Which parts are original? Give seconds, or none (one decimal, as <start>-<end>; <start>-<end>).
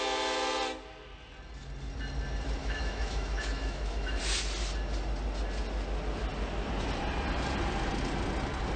0.0-2.6; 4.2-8.8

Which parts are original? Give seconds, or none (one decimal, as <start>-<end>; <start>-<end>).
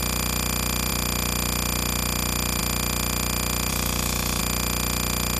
0.0-3.7; 4.4-5.4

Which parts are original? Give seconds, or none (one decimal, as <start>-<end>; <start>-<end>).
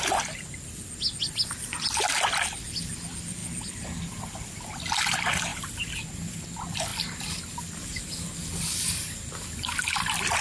0.0-10.4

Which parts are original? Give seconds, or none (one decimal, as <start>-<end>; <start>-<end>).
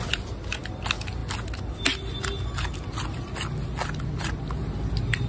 0.0-5.3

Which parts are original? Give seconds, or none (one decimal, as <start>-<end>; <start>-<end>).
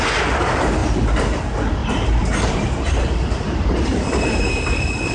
0.0-1.8; 4.5-5.1